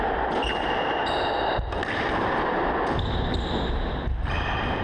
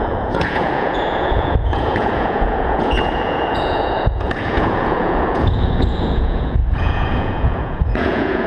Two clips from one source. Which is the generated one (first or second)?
second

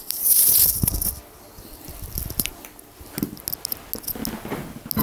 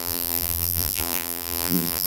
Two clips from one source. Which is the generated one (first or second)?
second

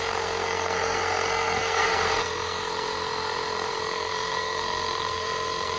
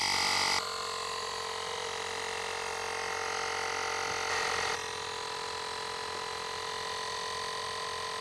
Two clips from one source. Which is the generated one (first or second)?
first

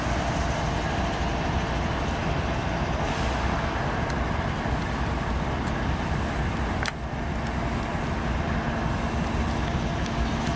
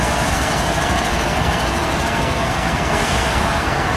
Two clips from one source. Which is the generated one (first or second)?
second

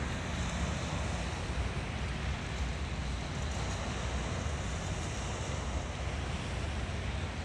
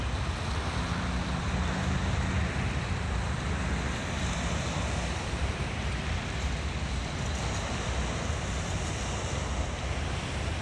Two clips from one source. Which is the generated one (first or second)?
second